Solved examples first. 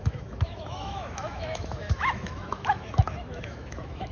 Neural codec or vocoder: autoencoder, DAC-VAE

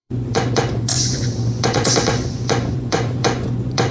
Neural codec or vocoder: vocoder, Vocos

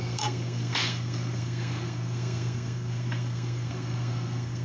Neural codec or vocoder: codec, SNAC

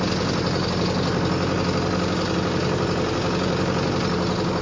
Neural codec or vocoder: none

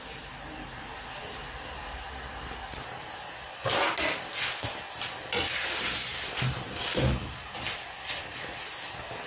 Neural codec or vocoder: none